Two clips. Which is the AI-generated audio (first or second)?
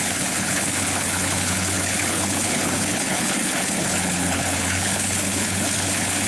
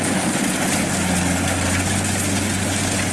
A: first